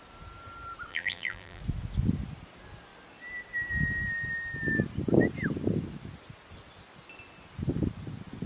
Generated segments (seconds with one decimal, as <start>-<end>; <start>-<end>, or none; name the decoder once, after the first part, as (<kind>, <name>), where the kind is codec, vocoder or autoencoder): 0.9-1.6 (vocoder, BigVGAN v2)